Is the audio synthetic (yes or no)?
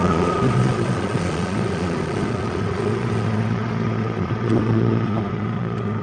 yes